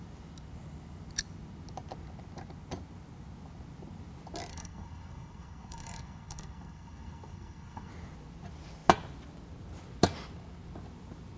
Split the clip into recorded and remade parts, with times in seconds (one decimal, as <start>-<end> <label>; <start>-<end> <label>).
0.0-4.5 recorded; 4.5-7.9 remade; 7.9-11.4 recorded